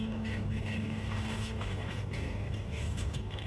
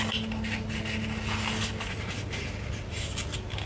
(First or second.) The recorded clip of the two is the second